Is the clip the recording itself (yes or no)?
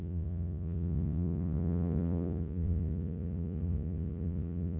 no